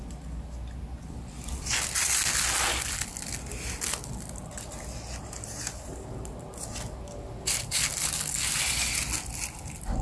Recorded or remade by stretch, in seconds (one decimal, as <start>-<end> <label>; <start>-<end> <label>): 0.0-10.0 recorded